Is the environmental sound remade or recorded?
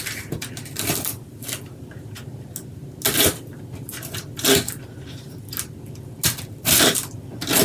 recorded